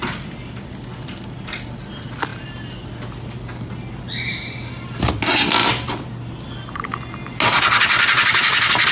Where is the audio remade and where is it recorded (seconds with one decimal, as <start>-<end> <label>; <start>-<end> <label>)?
0.0-8.9 recorded